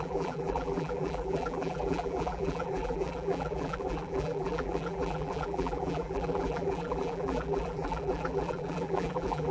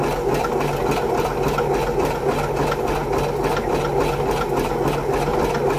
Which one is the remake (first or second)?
first